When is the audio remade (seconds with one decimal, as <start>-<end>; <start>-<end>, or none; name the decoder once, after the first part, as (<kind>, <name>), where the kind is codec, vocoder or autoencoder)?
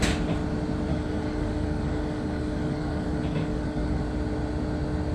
0.9-4.0 (codec, DAC)